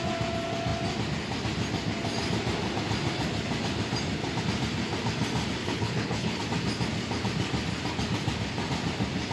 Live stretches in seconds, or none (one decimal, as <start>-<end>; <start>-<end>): 0.0-5.6; 6.4-9.3